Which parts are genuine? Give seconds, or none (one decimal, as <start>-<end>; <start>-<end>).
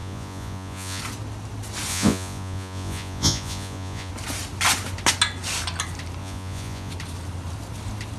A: 1.0-1.9; 4.1-6.2; 6.9-8.2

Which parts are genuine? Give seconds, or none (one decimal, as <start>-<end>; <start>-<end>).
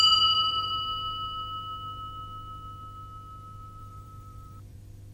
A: 0.7-3.8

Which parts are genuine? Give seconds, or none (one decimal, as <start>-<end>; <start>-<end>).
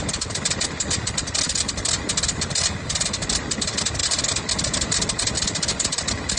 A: 0.0-6.4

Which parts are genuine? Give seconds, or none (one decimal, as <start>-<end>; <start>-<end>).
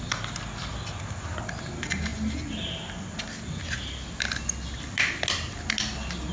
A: 0.0-6.3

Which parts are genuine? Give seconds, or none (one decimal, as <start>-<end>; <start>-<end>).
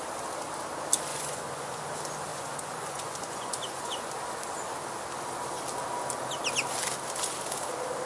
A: 0.0-1.1; 1.8-2.3; 4.1-8.0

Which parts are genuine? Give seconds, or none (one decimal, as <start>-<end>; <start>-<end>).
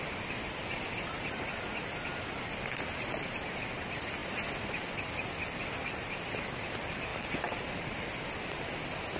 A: 0.0-7.1; 8.2-9.2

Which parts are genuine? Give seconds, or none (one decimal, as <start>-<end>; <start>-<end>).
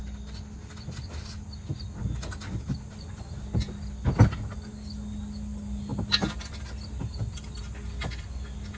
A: 0.0-8.8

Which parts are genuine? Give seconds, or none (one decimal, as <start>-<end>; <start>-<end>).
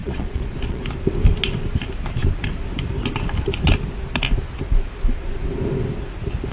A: 0.9-6.5